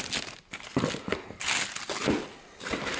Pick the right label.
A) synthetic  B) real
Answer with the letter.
B